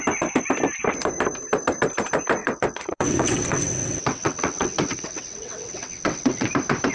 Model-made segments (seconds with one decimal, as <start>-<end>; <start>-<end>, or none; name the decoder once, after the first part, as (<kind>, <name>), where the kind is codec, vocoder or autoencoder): 2.4-6.5 (vocoder, WaveNeXt)